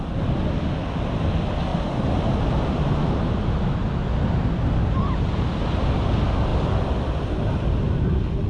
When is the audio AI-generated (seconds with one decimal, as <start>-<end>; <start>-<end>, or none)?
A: 1.7-3.1